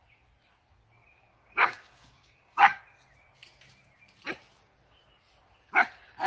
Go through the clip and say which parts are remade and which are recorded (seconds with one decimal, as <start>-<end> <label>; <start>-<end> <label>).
0.0-1.3 recorded; 1.3-2.8 remade; 2.8-6.3 recorded